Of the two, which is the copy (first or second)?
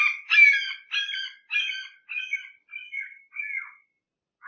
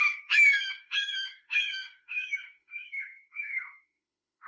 second